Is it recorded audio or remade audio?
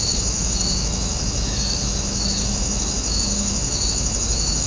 remade